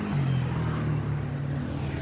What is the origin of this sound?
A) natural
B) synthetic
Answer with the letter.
A